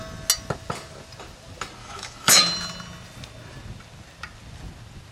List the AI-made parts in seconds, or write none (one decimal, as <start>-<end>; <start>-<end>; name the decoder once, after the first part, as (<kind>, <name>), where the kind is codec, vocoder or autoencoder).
1.8-2.4 (autoencoder, DAC-VAE)